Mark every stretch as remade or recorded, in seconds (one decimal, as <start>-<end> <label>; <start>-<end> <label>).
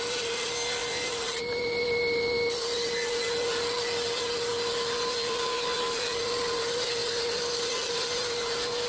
0.0-0.8 recorded; 0.8-2.0 remade; 2.0-8.9 recorded